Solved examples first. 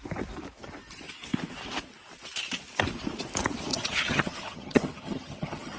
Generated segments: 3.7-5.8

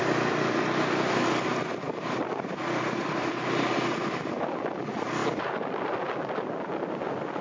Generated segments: none

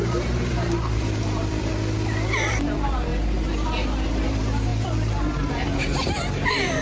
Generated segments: 0.0-1.7; 2.5-3.1; 4.1-6.8

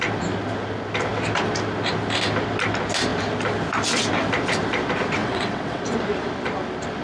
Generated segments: 5.2-5.8

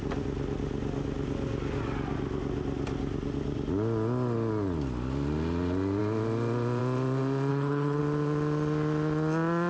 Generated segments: 7.5-8.0

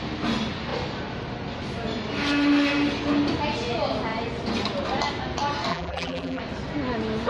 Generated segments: 5.7-6.4